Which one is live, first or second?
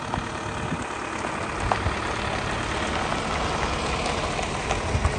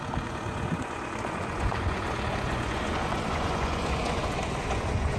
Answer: first